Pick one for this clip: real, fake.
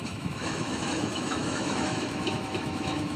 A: fake